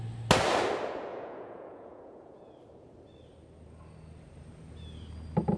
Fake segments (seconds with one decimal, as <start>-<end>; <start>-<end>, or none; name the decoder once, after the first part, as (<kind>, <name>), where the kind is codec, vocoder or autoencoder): 1.1-2.5 (vocoder, Vocos)

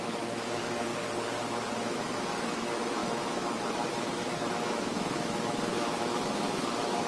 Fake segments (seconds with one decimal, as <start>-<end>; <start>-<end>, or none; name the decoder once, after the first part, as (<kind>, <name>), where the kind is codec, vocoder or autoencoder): 0.0-0.9 (autoencoder, DAC-VAE); 1.7-7.1

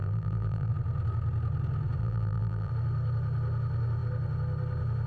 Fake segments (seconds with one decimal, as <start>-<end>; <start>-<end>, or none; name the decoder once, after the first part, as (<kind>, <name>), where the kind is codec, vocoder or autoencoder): 0.0-0.7 (vocoder, BigVGAN v2); 2.0-2.7